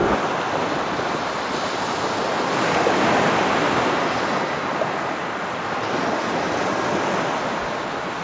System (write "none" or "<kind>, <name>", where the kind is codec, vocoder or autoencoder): none